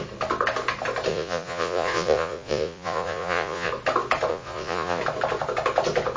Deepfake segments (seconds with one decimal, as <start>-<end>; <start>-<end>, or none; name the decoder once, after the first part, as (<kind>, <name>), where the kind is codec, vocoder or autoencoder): 1.1-3.7 (vocoder, Vocos); 4.3-5.0